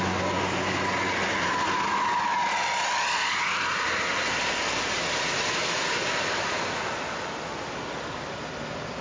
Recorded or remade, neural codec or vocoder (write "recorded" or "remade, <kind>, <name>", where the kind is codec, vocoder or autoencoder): recorded